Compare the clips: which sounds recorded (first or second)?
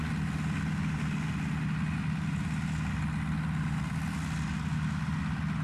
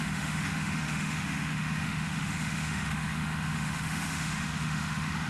first